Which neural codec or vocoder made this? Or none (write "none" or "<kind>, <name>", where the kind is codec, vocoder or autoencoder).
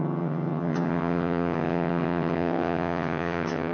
vocoder, HiFi-GAN